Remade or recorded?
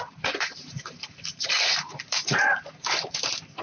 remade